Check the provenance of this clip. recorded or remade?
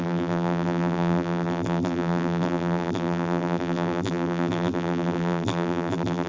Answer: remade